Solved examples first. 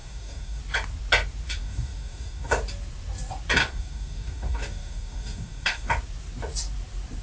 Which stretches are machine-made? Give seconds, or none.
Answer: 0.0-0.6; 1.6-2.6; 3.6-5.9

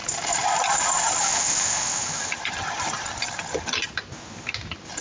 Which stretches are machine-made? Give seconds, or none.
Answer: none

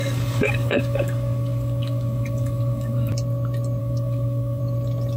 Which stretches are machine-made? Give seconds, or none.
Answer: 0.0-3.1; 3.8-4.6